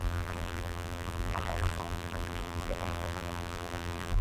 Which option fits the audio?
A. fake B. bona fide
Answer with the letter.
A